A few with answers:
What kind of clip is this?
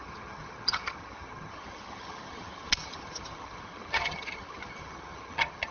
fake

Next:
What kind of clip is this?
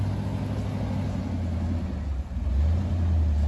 real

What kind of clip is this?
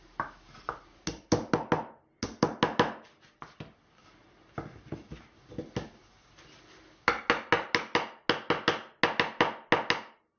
real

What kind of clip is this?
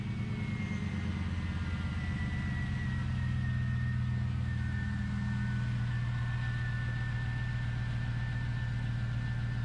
real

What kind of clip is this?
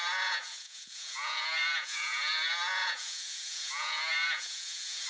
fake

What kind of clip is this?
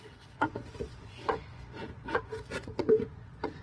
fake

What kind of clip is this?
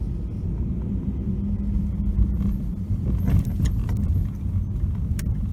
real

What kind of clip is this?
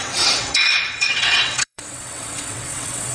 fake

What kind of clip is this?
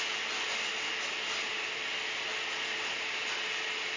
real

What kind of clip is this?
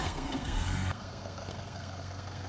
fake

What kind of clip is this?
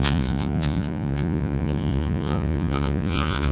fake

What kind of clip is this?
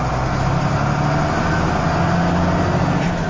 real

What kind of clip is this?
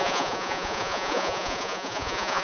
fake